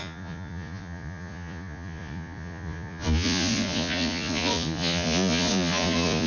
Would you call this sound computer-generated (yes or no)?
yes